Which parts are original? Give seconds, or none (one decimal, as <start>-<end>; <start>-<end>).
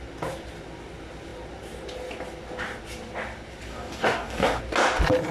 0.0-3.7; 4.6-5.3